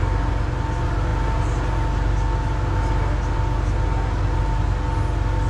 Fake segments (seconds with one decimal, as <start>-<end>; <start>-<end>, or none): none